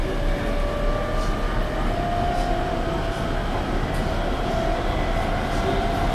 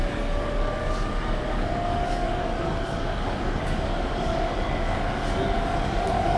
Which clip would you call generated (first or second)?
second